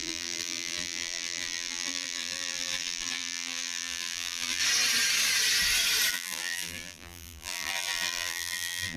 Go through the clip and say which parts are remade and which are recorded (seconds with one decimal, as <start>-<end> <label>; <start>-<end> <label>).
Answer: 0.0-4.6 remade; 4.6-6.1 recorded; 6.1-9.0 remade